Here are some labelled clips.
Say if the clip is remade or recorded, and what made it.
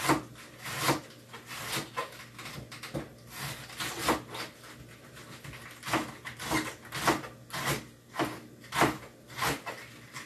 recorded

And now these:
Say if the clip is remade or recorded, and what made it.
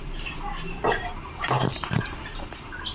remade, vocoder, BigVGAN v2